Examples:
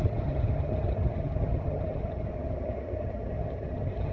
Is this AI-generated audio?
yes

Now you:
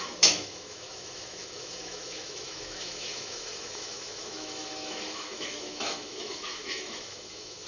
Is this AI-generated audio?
yes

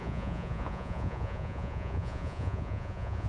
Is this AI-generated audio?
yes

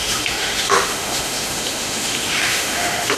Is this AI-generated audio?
yes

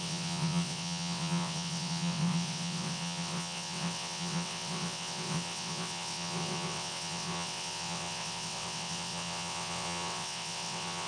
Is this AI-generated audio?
yes